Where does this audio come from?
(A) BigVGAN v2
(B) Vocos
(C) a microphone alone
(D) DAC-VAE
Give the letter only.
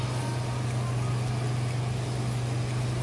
C